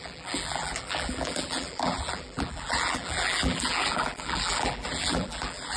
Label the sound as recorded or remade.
remade